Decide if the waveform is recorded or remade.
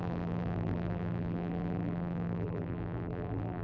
remade